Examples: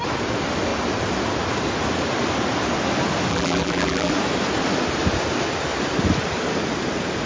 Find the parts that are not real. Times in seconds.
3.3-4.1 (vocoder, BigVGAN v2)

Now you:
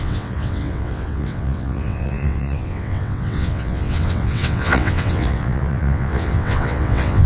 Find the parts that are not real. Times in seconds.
0.0-7.3 (vocoder, WaveNeXt)

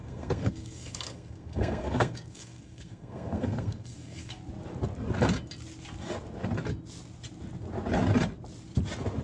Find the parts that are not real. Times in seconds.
0.0-4.4 (codec, SNAC)